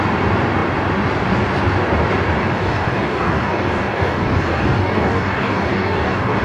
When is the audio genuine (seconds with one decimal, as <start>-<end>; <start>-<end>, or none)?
0.0-2.4